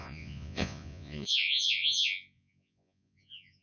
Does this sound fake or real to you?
fake